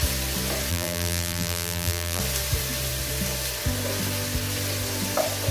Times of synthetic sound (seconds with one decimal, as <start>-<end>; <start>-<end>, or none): 0.7-2.2